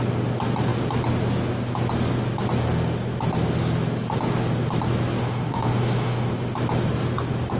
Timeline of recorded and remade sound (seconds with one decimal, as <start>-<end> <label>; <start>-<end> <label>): 0.0-5.2 recorded; 5.2-6.3 remade; 6.3-7.6 recorded